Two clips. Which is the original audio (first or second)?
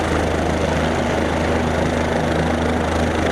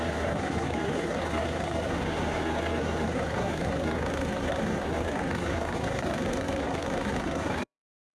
first